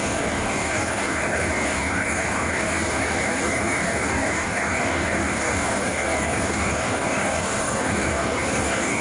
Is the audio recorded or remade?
remade